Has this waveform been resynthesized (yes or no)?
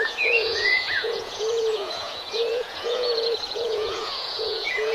yes